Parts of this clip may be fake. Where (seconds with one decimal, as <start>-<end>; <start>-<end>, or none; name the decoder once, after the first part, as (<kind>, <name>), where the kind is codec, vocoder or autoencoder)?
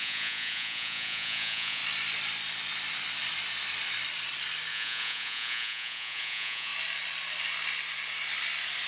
0.0-1.8 (vocoder, Vocos); 4.7-6.7